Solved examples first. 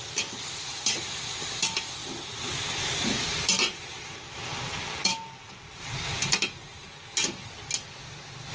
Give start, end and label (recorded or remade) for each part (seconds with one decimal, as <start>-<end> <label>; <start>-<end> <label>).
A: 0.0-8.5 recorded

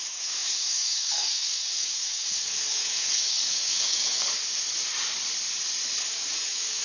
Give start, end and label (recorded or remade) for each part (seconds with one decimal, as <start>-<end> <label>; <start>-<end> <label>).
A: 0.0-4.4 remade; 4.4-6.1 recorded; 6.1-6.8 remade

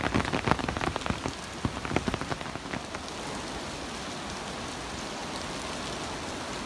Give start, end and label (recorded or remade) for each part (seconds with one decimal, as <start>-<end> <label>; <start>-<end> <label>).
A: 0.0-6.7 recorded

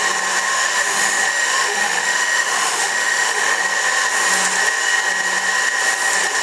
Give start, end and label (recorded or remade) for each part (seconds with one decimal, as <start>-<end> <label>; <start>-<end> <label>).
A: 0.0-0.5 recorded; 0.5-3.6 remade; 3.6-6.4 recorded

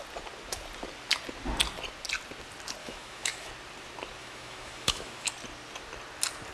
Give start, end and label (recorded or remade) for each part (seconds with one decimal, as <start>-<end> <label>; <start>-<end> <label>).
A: 0.0-2.8 recorded; 2.8-3.5 remade; 3.5-4.2 recorded; 4.2-5.3 remade; 5.3-6.5 recorded

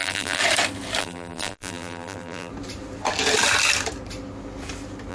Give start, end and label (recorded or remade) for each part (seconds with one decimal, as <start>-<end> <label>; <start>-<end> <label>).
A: 0.0-0.4 remade; 0.4-1.0 recorded; 1.0-2.5 remade; 2.5-5.1 recorded